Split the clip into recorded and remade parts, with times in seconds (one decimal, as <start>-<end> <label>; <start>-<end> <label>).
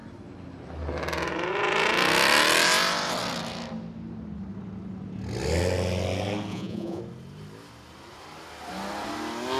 0.0-6.5 recorded; 6.5-7.0 remade; 7.0-9.6 recorded